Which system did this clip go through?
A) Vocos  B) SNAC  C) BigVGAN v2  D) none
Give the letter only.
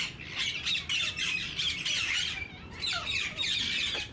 C